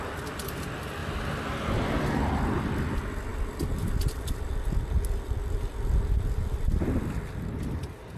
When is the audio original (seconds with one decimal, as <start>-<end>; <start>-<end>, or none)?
1.0-2.2